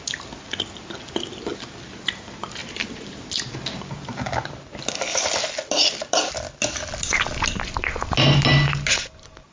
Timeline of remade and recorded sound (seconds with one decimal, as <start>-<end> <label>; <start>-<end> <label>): 0.0-2.6 recorded; 2.6-3.4 remade; 3.4-9.5 recorded